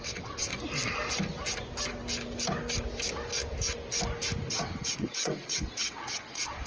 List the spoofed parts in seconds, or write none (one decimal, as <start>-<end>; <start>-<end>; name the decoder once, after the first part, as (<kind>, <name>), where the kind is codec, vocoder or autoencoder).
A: 0.0-0.5 (vocoder, WaveNeXt); 4.5-6.7